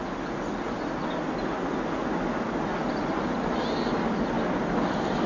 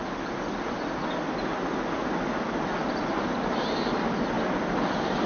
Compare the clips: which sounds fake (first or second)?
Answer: second